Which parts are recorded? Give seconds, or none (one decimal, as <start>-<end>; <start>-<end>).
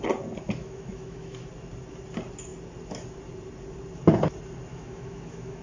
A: 0.0-0.6; 1.5-4.7